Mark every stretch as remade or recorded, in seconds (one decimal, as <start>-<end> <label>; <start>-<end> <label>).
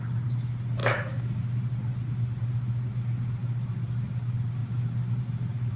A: 0.0-0.8 recorded; 0.8-1.4 remade; 1.4-5.8 recorded